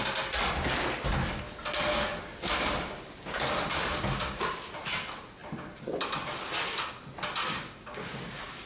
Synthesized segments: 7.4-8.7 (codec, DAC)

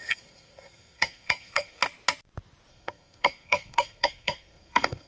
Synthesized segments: 0.0-1.8 (codec, SNAC); 2.7-5.1

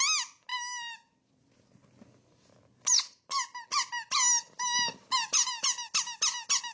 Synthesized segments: none

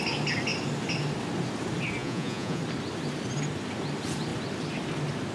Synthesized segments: 2.0-2.6 (vocoder, Vocos)

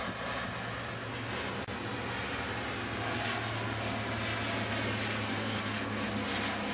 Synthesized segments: 5.3-6.1 (codec, SNAC)

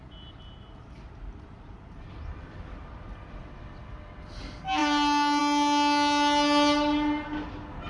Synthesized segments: none

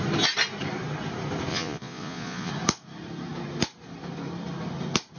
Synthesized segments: 1.5-2.5 (vocoder, Vocos)